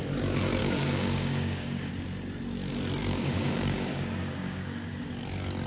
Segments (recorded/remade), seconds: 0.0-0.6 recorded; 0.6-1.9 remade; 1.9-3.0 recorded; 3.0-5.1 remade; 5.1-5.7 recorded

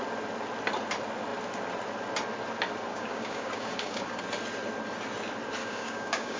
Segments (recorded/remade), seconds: 0.0-2.9 recorded; 2.9-4.2 remade; 4.2-5.6 recorded; 5.6-6.4 remade

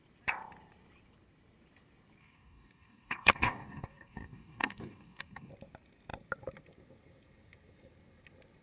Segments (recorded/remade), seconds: 0.0-2.2 recorded; 2.2-5.5 remade; 5.5-8.6 recorded